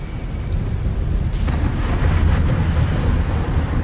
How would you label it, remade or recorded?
recorded